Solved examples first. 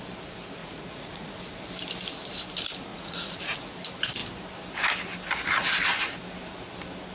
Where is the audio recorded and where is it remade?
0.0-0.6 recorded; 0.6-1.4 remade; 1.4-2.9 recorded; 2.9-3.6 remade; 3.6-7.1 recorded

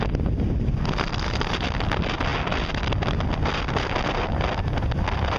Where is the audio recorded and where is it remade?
0.0-5.4 recorded

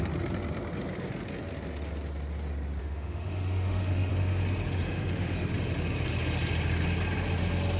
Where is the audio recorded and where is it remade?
0.0-2.8 recorded; 2.8-4.1 remade; 4.1-4.8 recorded; 4.8-5.5 remade; 5.5-7.8 recorded

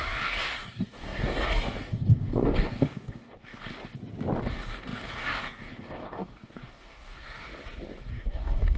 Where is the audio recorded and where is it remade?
0.0-3.7 remade; 3.7-4.5 recorded; 4.5-7.5 remade; 7.5-8.1 recorded; 8.1-8.8 remade

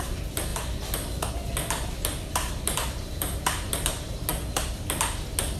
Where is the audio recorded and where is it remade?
0.0-2.8 recorded; 2.8-3.7 remade; 3.7-5.6 recorded

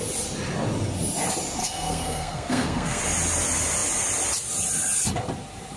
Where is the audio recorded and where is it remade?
0.0-1.6 recorded; 1.6-3.0 remade; 3.0-5.8 recorded

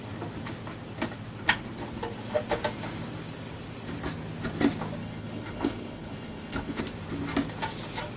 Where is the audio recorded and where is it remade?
0.0-5.0 recorded; 5.0-6.8 remade; 6.8-8.2 recorded

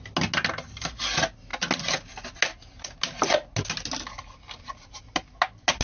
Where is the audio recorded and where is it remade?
0.0-5.8 recorded